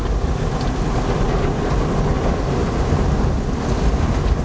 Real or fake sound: real